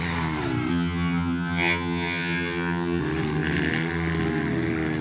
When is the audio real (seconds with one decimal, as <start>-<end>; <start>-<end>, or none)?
0.0-0.7; 3.0-5.0